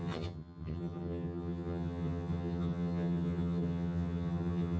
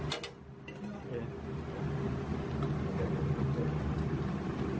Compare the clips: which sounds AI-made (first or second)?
first